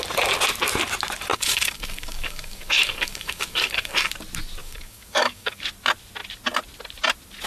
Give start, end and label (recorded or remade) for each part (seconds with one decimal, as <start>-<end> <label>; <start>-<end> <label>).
0.0-1.3 recorded; 1.3-4.1 remade; 4.1-4.6 recorded; 4.6-5.6 remade; 5.6-7.5 recorded